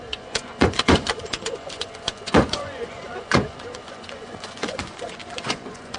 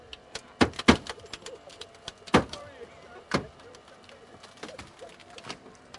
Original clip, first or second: second